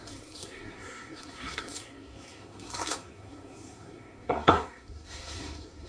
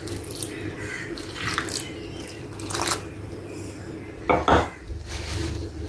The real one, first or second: second